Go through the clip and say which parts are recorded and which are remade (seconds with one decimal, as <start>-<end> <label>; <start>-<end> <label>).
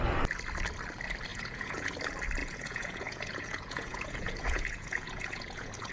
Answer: 0.0-1.3 recorded; 1.3-1.9 remade; 1.9-2.4 recorded; 2.4-5.9 remade